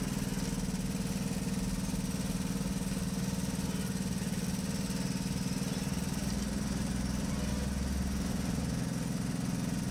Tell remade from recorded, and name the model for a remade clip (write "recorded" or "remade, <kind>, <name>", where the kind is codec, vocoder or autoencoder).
recorded